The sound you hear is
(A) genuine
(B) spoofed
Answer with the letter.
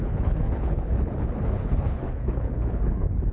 B